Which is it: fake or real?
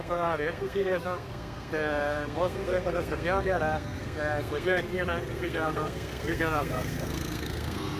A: fake